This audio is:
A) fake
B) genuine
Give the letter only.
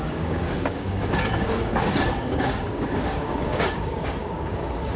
A